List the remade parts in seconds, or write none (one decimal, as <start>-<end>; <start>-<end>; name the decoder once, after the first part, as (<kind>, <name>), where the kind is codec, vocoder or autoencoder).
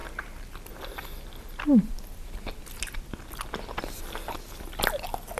none